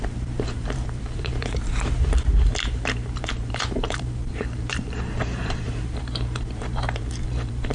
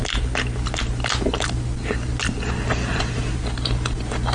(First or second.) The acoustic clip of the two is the second